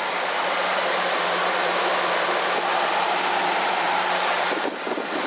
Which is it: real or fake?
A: fake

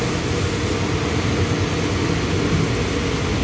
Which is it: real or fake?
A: real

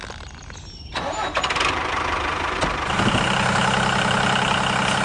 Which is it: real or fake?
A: real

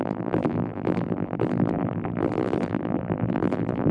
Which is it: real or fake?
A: fake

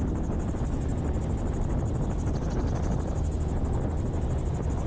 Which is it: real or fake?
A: fake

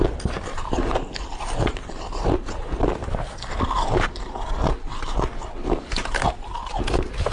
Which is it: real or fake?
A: real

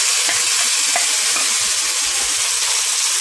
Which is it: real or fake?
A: real